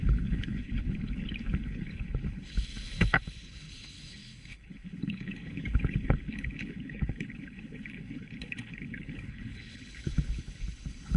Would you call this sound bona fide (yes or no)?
no